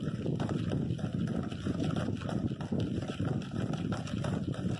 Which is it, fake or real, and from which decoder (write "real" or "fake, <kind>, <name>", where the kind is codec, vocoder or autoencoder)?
real